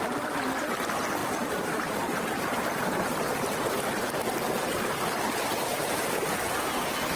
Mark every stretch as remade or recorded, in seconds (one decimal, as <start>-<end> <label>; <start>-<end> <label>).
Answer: 0.0-7.2 recorded